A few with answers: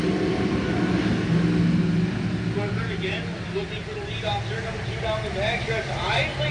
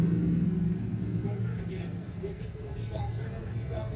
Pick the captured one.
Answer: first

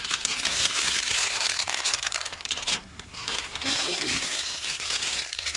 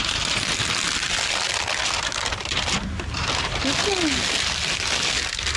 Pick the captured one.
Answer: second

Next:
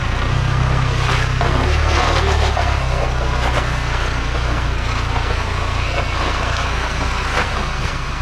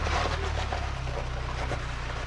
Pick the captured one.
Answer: second